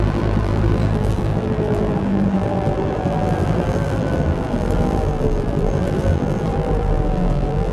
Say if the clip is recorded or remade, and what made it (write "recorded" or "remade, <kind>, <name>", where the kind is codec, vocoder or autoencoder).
remade, vocoder, BigVGAN v2